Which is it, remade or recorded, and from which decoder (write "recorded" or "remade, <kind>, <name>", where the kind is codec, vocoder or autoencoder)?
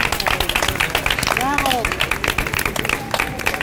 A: recorded